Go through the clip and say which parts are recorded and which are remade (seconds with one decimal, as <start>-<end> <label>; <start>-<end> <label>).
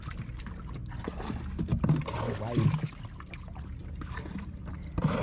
0.0-3.8 recorded; 3.8-4.6 remade; 4.6-5.2 recorded